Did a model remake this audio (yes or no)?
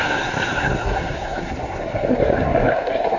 yes